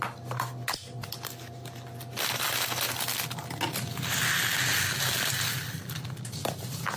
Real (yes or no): yes